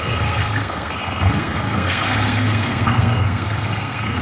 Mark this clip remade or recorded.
remade